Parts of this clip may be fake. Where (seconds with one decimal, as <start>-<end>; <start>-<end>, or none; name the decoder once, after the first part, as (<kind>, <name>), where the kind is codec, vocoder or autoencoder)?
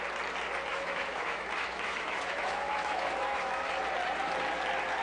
0.7-3.7 (autoencoder, DAC-VAE)